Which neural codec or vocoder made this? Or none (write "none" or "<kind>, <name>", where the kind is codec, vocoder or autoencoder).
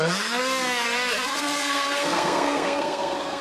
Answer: codec, SNAC